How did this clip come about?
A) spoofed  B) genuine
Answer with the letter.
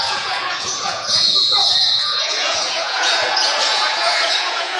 A